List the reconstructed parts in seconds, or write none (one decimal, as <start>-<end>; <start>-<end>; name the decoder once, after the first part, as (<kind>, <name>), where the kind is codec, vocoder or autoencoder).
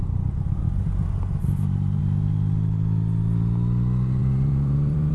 1.4-2.0 (vocoder, BigVGAN v2); 4.2-5.1